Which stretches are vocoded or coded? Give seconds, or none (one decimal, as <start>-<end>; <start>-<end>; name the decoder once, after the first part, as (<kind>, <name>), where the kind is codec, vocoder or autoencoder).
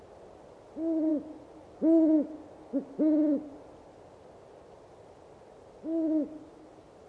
none